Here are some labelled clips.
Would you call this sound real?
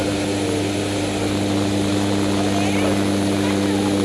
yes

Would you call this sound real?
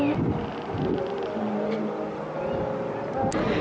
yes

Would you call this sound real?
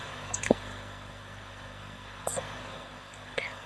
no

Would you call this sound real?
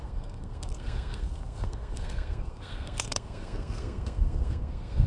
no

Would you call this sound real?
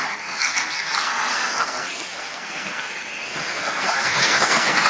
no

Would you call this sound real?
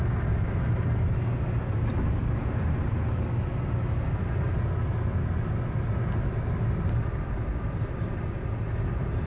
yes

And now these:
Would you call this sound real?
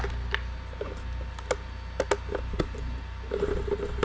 yes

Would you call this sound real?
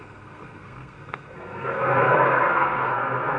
no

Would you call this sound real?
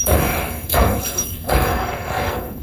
no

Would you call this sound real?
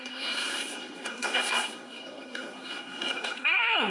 no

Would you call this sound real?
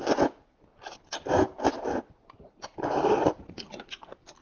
yes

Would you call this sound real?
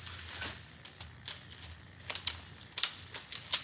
yes